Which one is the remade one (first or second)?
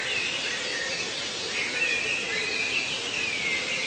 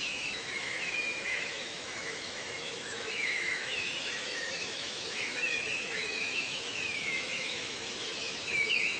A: second